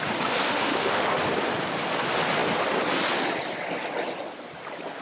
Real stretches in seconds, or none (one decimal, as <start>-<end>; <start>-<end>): 0.0-0.5; 1.1-5.0